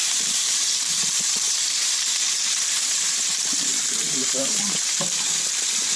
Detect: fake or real fake